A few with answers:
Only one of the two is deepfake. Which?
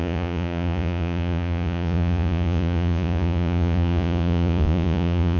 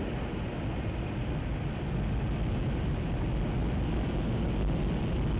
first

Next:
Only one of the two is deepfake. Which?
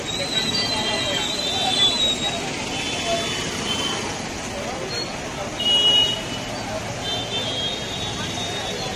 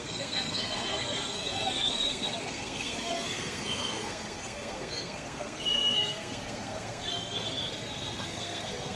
second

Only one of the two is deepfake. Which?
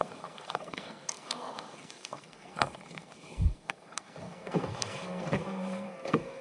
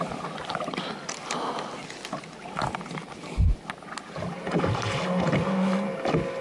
first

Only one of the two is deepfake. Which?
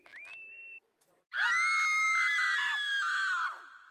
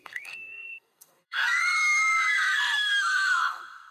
second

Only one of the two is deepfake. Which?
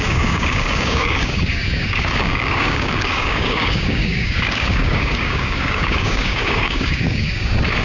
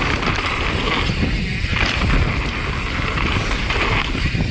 first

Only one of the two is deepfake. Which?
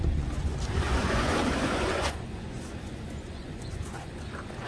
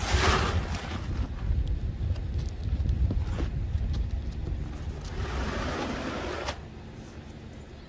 first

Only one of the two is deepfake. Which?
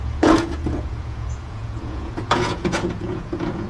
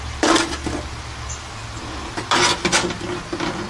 first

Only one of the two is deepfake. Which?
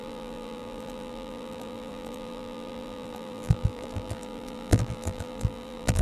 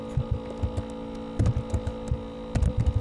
first